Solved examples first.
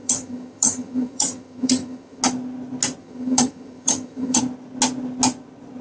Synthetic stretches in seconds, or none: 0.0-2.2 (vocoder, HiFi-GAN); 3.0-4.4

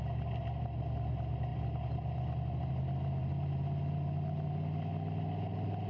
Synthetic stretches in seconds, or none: none

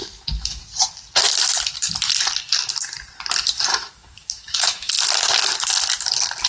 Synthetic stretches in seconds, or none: 0.0-0.6 (autoencoder, DAC-VAE); 3.7-4.9

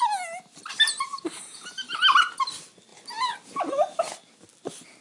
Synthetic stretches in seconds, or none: none

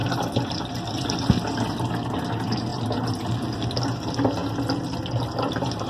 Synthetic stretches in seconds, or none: 1.6-2.7 (vocoder, BigVGAN v2); 3.8-4.4; 5.1-5.9